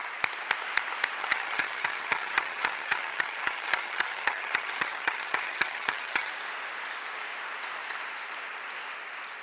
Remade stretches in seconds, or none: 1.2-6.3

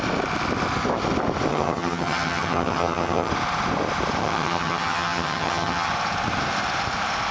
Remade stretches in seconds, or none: 1.5-3.3; 4.2-5.9